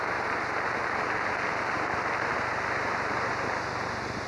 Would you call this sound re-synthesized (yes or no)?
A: no